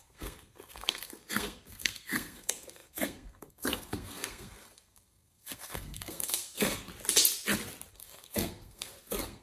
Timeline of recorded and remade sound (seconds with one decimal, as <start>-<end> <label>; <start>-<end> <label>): 0.0-6.9 remade; 6.9-7.9 recorded; 7.9-9.4 remade